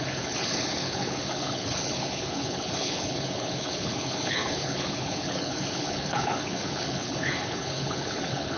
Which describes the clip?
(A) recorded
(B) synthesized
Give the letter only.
B